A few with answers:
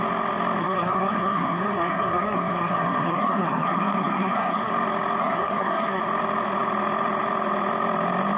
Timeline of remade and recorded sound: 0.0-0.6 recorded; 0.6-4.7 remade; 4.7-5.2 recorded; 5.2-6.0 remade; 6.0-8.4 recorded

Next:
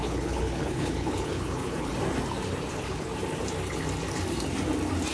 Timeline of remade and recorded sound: 0.0-1.9 remade; 1.9-2.7 recorded; 2.7-3.1 remade; 3.1-5.1 recorded

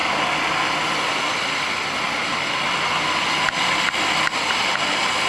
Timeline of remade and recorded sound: 0.0-5.3 recorded

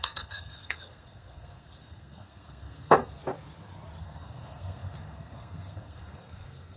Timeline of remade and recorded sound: 0.0-3.2 remade; 3.2-4.0 recorded; 4.0-6.8 remade

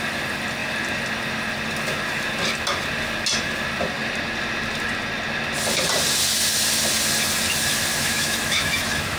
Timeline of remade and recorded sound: 0.0-7.9 recorded; 7.9-9.2 remade

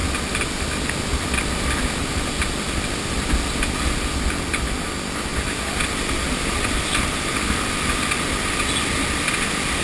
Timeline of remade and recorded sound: 0.0-9.8 recorded

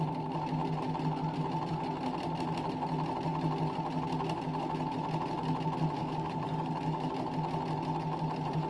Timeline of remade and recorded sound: 0.0-6.0 recorded; 6.0-7.1 remade; 7.1-8.7 recorded